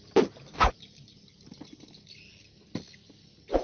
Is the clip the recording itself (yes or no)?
yes